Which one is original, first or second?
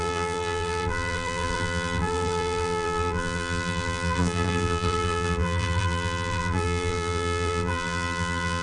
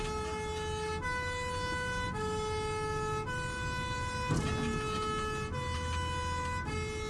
second